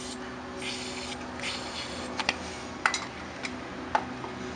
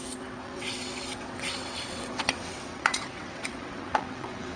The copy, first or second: second